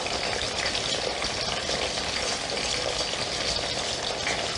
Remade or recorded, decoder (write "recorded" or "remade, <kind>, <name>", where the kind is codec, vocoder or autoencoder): recorded